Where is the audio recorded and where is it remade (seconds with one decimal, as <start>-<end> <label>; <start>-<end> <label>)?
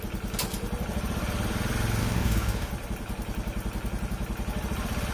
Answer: 0.0-2.0 recorded; 2.0-2.7 remade; 2.7-5.1 recorded